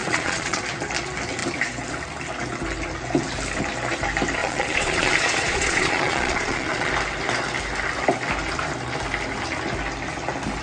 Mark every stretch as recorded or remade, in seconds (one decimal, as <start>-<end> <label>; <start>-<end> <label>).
0.0-0.6 remade; 0.6-4.4 recorded; 4.4-6.9 remade; 6.9-10.6 recorded